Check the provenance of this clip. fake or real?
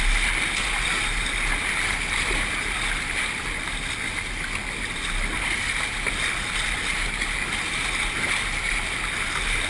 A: real